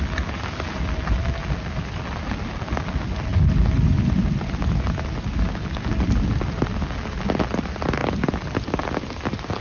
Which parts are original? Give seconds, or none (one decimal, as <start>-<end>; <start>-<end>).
0.0-9.6